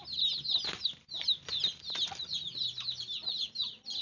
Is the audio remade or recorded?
recorded